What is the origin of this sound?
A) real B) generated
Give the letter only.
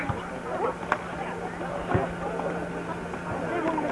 A